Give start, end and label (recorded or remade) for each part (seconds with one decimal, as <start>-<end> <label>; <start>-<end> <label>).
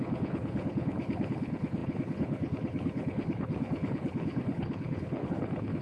0.0-5.8 remade